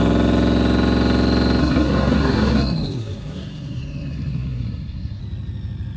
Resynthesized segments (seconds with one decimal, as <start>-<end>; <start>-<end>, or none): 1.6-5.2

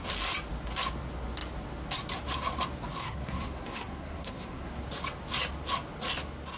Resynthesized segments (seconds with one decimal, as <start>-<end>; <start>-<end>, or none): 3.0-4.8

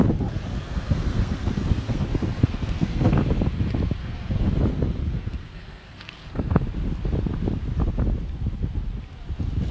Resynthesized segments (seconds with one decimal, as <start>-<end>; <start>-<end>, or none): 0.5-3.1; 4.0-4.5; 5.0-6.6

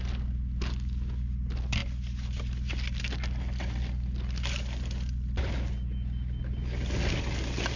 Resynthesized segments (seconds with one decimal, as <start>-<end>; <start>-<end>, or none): none